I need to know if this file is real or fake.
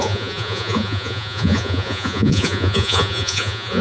fake